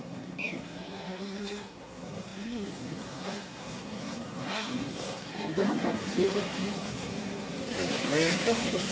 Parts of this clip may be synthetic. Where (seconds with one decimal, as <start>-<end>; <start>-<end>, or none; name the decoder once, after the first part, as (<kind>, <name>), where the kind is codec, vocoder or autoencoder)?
0.0-8.9 (codec, SNAC)